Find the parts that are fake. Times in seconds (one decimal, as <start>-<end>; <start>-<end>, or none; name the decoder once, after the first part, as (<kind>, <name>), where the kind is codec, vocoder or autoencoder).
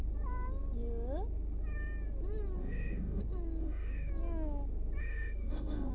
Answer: 2.6-3.2 (autoencoder, DAC-VAE); 3.6-4.1; 5.0-5.9